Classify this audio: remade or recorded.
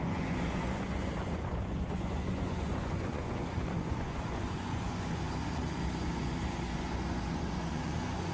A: remade